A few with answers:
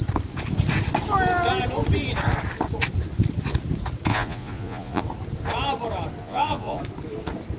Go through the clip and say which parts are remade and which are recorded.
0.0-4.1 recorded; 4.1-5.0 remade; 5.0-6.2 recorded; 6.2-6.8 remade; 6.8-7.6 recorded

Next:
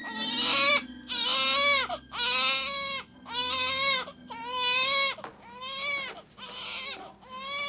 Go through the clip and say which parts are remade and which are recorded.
0.0-7.7 recorded

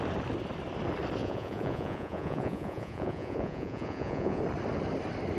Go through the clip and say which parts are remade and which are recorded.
0.0-1.2 recorded; 1.2-4.4 remade; 4.4-5.4 recorded